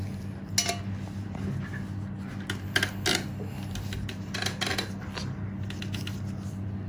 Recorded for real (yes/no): yes